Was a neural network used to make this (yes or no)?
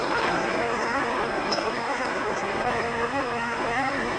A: yes